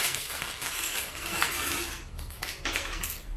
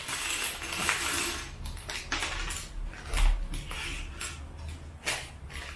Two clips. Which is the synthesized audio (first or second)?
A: first